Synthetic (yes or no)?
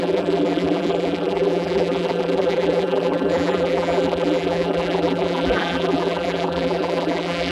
yes